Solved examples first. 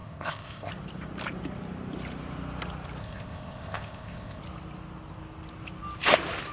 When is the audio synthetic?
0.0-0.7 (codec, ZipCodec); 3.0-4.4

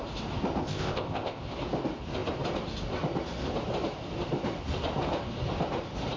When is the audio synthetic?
0.6-1.4 (codec, ZipCodec)

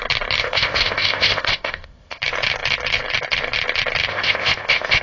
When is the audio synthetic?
0.4-2.2 (codec, ZipCodec); 4.1-5.0

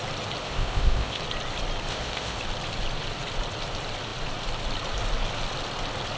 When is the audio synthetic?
0.4-1.2 (codec, ZipCodec); 1.9-2.4

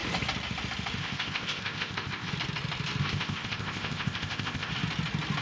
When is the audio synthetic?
1.0-2.3 (codec, ZipCodec); 3.0-4.7

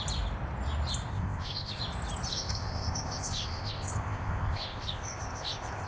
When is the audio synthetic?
1.1-1.8 (codec, ZipCodec); 2.3-5.9

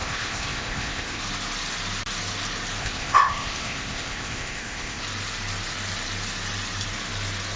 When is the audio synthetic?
0.0-1.2 (codec, ZipCodec); 2.8-5.0

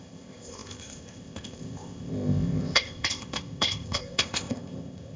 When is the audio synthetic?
0.0-5.2 (codec, ZipCodec)